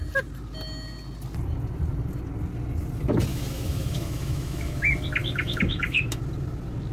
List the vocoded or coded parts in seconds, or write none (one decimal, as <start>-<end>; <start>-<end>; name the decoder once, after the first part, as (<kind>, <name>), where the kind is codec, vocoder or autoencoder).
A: 3.3-4.8 (autoencoder, DAC-VAE); 5.2-6.2